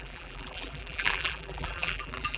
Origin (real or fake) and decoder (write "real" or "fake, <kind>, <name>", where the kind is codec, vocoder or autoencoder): fake, vocoder, BigVGAN v2